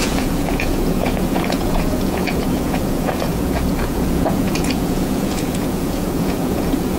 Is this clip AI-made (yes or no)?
yes